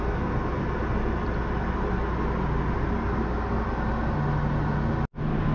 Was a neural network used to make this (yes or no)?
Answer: no